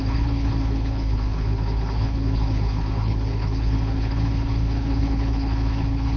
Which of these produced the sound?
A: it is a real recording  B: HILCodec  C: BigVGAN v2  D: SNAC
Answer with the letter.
B